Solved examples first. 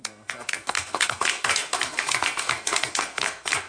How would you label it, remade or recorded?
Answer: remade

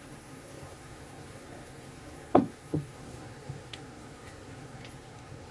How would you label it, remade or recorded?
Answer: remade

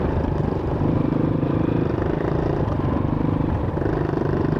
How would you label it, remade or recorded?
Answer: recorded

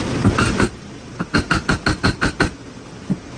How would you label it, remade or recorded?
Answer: recorded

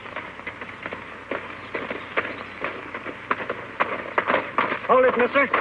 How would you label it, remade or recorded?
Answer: recorded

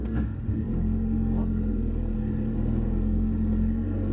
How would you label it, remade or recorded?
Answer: remade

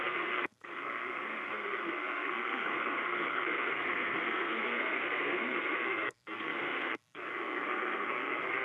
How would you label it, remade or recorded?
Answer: remade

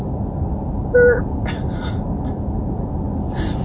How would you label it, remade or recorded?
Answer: recorded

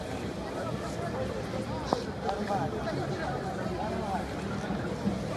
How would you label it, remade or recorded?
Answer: recorded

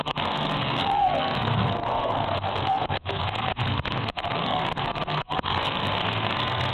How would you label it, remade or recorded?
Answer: remade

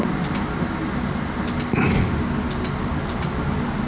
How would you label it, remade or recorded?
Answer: recorded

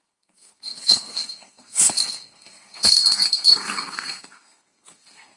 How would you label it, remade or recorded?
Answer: remade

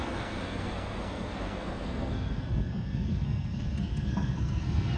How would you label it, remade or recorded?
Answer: remade